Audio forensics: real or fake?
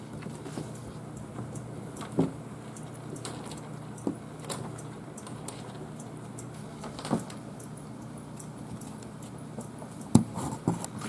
real